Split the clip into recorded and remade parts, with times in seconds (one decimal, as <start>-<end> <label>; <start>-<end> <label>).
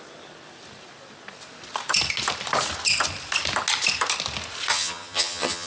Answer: 0.0-4.7 recorded; 4.7-5.7 remade